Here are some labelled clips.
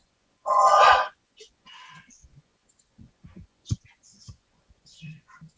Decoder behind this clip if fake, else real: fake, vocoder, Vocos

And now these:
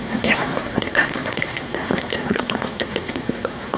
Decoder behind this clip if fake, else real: fake, codec, SNAC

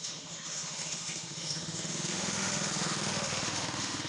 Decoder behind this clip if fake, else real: fake, autoencoder, DAC-VAE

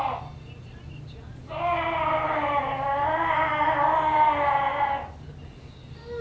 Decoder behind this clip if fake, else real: real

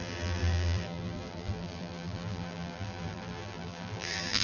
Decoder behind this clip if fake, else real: fake, vocoder, BigVGAN v2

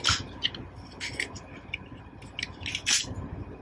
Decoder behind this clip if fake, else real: real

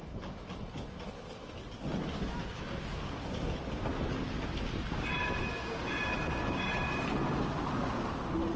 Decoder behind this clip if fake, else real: real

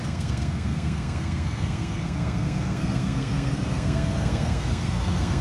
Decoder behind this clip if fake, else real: fake, codec, SNAC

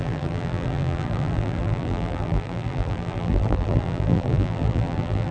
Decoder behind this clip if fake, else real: fake, vocoder, BigVGAN v2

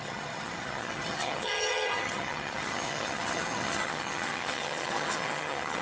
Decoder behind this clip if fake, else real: fake, vocoder, HiFi-GAN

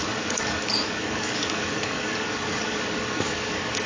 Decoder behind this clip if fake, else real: fake, codec, DAC